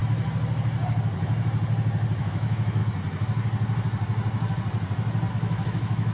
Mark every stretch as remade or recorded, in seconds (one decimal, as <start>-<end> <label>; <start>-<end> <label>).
0.0-2.2 recorded; 2.2-2.8 remade; 2.8-5.3 recorded; 5.3-6.1 remade